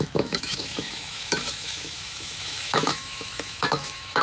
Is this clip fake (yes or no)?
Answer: yes